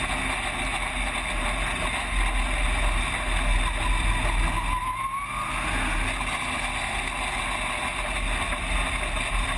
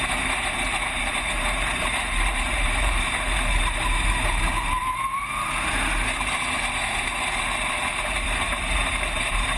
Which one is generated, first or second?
second